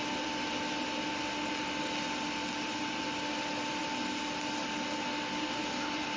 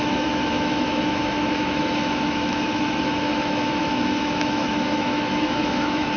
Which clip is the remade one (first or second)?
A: second